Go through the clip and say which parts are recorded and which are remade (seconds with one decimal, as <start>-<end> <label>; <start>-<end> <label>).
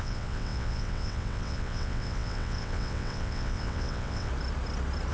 0.0-4.3 remade; 4.3-5.1 recorded